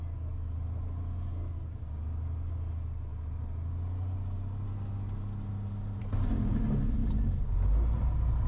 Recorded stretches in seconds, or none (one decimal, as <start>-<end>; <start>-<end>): 0.0-8.5